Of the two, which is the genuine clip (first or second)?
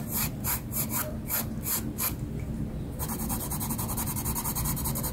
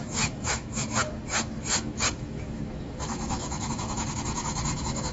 first